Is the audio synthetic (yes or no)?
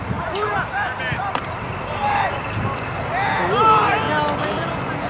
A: no